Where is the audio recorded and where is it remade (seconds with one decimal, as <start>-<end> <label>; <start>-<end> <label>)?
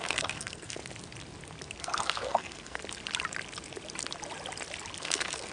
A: 0.0-0.8 remade; 0.8-1.8 recorded; 1.8-2.8 remade; 2.8-5.0 recorded; 5.0-5.5 remade